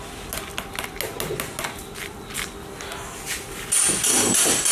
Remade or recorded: recorded